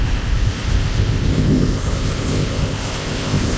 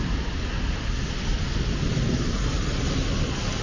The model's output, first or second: first